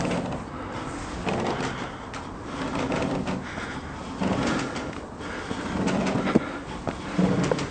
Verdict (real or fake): real